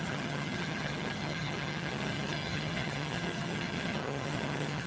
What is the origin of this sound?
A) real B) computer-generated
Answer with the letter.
B